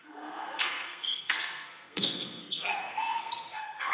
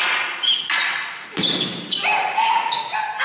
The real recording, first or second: second